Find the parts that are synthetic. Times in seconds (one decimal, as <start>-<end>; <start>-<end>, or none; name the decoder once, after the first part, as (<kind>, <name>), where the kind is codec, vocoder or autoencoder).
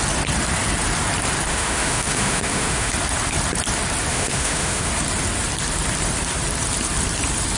1.5-2.9 (autoencoder, DAC-VAE); 4.1-4.9